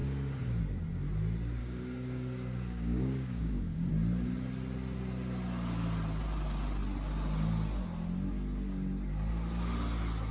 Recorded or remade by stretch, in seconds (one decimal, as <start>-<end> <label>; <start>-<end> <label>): 0.0-0.6 remade; 0.6-1.6 recorded; 1.6-3.9 remade; 3.9-10.3 recorded